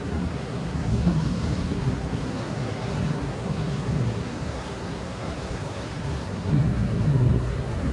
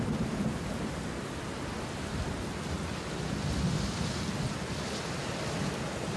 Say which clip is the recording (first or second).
second